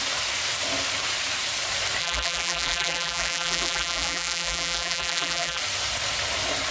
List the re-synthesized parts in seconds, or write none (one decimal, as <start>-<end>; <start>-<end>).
2.0-5.6